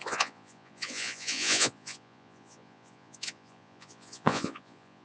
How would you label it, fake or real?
fake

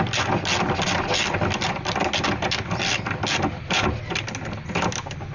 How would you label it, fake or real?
real